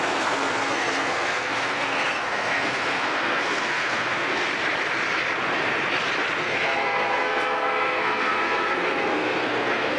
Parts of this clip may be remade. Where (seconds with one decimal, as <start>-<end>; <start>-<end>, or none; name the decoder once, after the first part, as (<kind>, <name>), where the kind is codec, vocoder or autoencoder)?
0.0-4.5 (codec, SNAC); 6.4-10.0